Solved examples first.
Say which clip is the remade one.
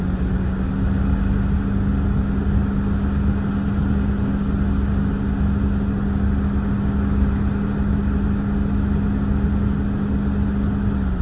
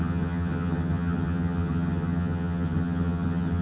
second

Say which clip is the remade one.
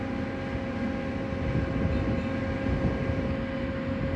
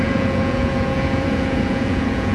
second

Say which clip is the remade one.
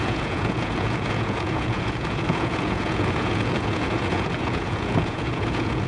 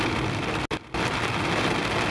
first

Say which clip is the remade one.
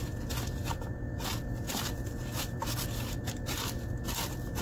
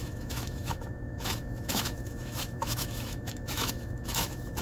second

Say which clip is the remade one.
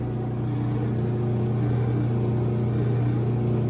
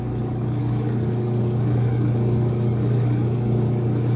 second